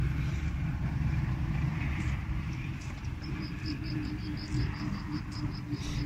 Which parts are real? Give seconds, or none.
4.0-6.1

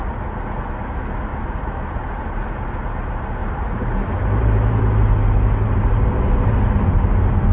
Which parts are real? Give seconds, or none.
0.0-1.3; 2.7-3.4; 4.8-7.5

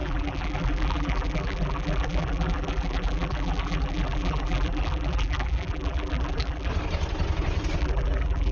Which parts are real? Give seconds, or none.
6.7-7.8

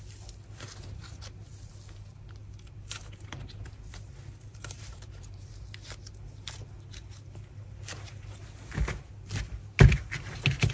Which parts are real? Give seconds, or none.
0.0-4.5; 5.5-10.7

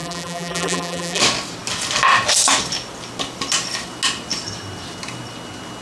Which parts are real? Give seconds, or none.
1.2-5.8

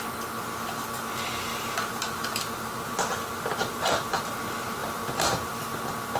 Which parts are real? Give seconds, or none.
0.0-1.5; 4.2-4.8; 5.5-6.2